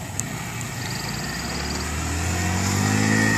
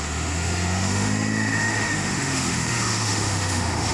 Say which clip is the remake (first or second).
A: second